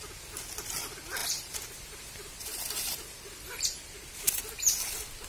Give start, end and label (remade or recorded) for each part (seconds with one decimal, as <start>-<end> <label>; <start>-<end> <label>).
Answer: 0.0-1.2 recorded; 1.2-4.4 remade; 4.4-5.3 recorded